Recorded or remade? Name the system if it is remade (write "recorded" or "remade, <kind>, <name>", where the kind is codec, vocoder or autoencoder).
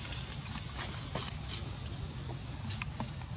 recorded